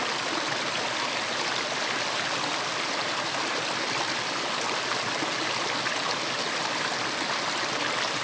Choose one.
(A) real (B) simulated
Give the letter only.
A